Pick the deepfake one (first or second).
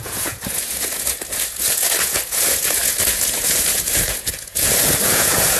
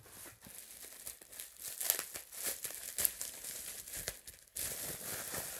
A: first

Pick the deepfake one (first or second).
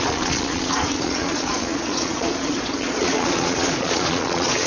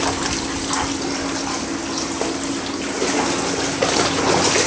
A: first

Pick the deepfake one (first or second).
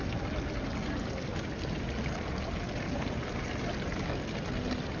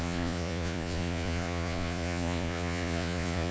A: second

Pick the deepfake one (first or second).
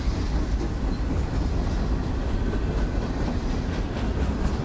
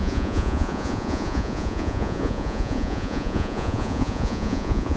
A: second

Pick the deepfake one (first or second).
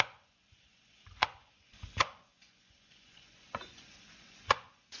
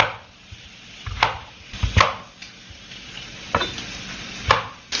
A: first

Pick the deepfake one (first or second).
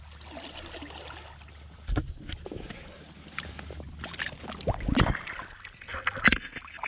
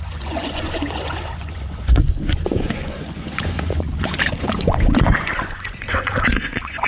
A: second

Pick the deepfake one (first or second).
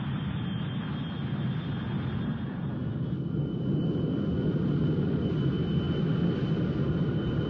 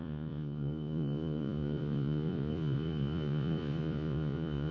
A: second